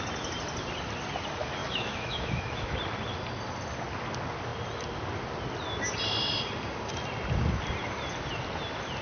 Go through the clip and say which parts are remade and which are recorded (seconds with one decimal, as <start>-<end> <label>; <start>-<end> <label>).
0.0-1.6 recorded; 1.6-2.7 remade; 2.7-9.0 recorded